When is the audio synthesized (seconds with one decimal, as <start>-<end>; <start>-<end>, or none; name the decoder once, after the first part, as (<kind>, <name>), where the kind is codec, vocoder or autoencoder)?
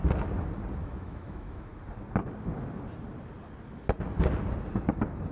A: 0.8-1.7 (autoencoder, DAC-VAE)